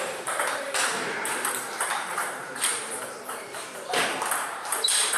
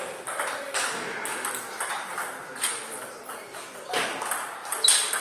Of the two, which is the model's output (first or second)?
first